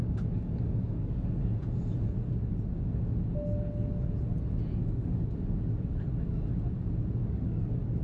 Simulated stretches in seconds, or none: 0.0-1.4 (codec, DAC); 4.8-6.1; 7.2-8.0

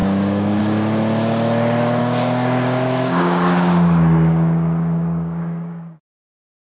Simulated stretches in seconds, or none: 0.0-0.6 (codec, DAC); 2.0-6.1

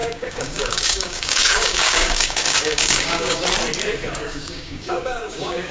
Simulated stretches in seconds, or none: 0.0-3.4 (codec, DAC); 4.1-5.7

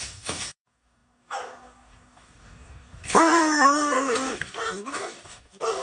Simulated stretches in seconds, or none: 0.0-5.8 (codec, DAC)

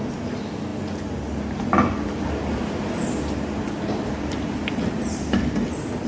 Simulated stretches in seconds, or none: none

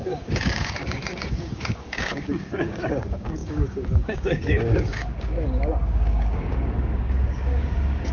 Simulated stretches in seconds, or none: 0.0-8.1 (codec, DAC)

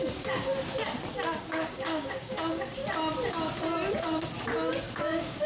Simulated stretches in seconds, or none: 0.0-0.5 (codec, DAC); 1.4-2.8; 4.8-5.5

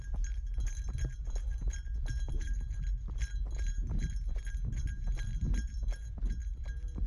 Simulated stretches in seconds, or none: none